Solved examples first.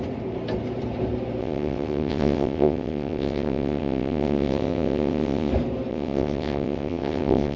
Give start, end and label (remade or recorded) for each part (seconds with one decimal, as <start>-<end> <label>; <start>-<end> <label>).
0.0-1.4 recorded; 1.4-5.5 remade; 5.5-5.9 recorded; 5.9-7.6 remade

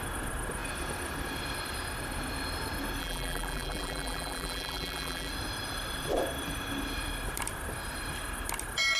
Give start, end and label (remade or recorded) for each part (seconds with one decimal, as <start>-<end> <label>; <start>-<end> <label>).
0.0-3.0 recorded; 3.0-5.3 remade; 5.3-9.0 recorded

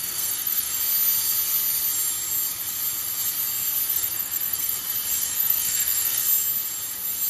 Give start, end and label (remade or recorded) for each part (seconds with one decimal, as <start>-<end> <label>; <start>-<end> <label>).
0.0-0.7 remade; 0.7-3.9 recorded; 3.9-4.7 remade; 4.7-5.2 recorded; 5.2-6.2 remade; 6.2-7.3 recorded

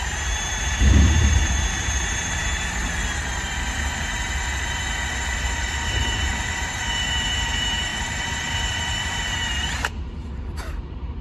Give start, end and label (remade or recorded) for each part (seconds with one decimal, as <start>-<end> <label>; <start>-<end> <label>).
0.0-11.2 remade

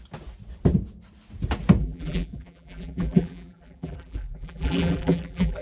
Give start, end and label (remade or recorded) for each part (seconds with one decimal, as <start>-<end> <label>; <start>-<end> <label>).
0.0-1.8 recorded; 1.8-5.6 remade

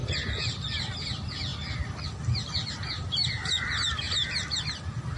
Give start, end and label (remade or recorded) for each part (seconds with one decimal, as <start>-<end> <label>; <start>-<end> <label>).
0.0-0.9 remade; 0.9-1.5 recorded; 1.5-4.6 remade; 4.6-5.2 recorded

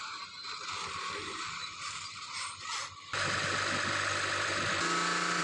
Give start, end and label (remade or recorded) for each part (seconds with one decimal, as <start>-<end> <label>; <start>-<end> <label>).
0.0-2.8 remade; 2.8-5.4 recorded